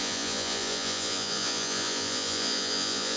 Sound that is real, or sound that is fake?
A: fake